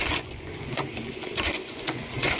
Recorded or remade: remade